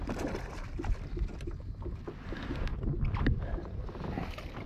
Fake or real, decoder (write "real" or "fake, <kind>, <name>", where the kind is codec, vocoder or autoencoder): real